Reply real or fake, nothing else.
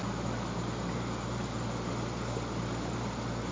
real